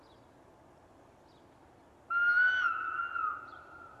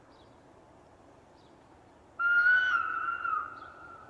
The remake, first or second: second